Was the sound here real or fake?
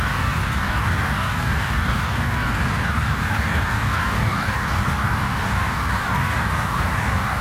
fake